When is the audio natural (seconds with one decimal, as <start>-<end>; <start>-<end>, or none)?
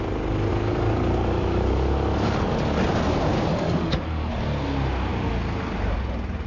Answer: 0.0-0.5; 2.5-3.5; 4.3-6.5